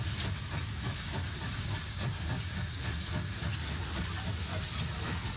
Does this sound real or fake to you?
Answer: real